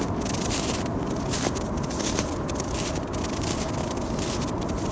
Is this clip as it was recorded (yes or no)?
yes